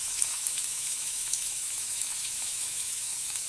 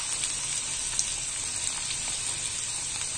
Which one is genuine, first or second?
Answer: second